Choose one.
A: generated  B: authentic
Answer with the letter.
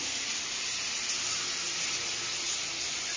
B